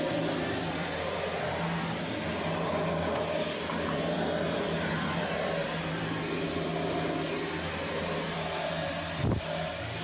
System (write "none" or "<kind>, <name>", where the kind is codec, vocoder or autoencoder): none